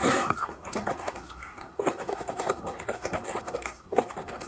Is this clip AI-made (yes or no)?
yes